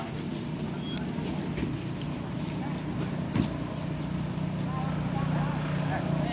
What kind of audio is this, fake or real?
real